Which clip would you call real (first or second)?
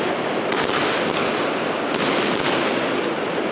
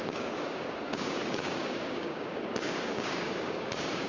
first